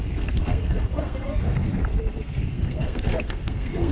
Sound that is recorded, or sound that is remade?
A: remade